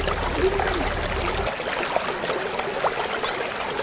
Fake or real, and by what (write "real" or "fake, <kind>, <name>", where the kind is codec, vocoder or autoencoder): real